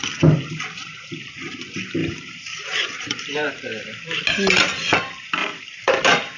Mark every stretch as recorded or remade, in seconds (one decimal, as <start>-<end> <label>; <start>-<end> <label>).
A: 0.0-2.0 recorded; 2.0-3.5 remade; 3.5-5.4 recorded; 5.4-6.4 remade